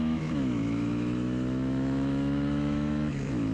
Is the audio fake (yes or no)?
yes